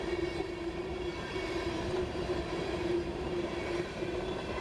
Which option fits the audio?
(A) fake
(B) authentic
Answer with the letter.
A